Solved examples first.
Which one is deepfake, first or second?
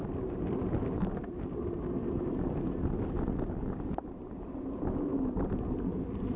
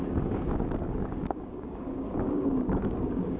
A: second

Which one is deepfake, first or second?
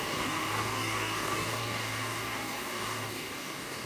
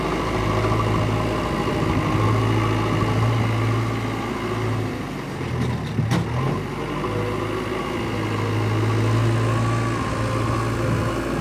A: first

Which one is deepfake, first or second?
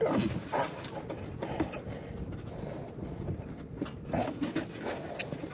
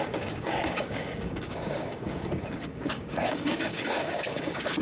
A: second